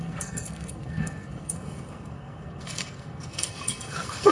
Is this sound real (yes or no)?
no